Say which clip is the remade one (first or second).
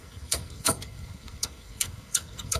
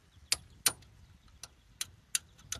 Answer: first